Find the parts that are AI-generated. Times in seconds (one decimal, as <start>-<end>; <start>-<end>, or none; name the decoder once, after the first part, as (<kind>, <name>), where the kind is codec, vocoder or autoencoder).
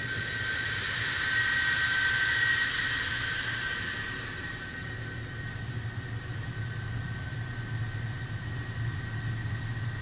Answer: 6.3-7.3 (vocoder, BigVGAN v2)